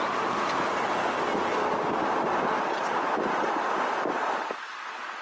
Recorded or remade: recorded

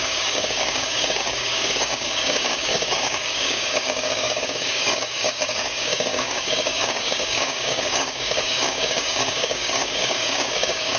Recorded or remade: remade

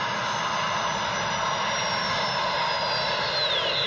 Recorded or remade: recorded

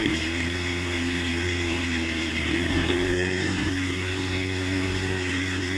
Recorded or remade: remade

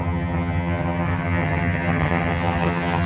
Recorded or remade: remade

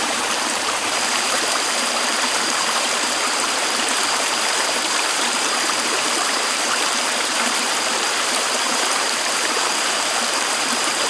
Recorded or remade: remade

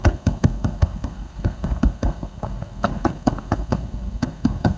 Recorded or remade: remade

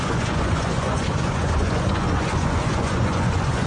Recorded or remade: remade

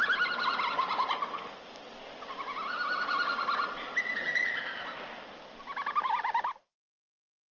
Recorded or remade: recorded